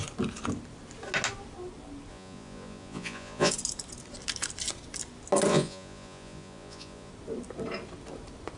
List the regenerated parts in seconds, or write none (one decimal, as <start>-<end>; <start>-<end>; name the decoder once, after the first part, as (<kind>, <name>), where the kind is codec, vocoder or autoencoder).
2.1-3.5 (vocoder, Vocos); 5.5-7.1